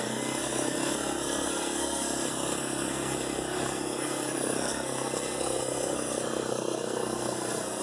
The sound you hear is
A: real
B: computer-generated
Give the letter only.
B